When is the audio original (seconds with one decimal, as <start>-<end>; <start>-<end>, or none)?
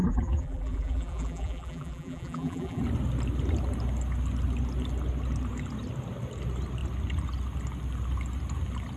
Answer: 2.8-9.0